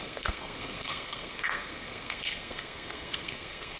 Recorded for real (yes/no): no